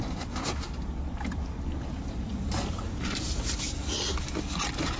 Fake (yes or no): no